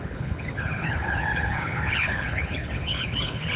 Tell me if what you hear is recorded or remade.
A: remade